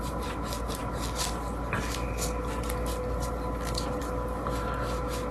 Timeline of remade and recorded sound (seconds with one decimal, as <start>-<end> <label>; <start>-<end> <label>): 0.0-5.3 recorded